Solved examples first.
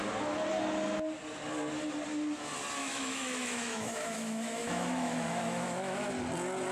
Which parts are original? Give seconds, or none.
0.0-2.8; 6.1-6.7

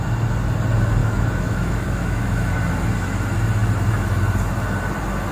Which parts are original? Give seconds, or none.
0.0-1.0; 2.6-5.3

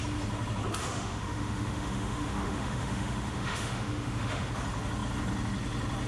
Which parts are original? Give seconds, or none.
0.0-0.8; 4.5-6.1

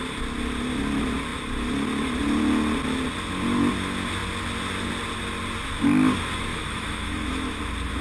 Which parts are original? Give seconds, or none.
0.0-6.5; 7.6-8.0

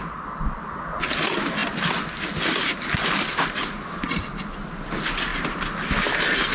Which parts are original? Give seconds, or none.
0.0-6.5